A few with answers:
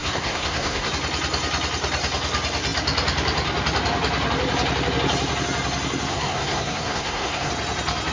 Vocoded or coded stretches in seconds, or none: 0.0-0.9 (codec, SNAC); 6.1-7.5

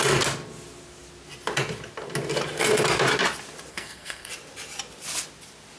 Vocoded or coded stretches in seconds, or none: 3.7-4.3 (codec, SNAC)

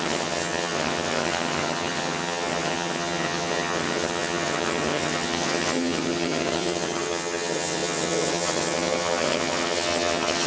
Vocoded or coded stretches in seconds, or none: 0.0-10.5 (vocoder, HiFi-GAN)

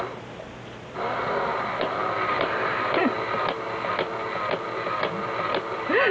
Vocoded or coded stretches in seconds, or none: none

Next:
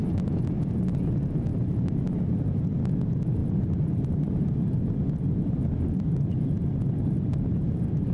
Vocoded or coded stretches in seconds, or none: 3.4-6.4 (vocoder, BigVGAN v2)